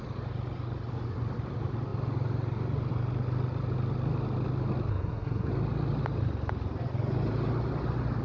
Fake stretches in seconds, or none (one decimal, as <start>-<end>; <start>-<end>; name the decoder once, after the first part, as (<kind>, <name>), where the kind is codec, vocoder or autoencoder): 4.9-5.5 (codec, SNAC)